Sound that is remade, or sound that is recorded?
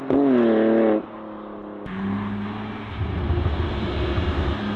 recorded